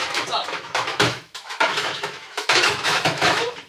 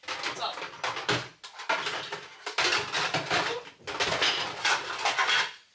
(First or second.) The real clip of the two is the second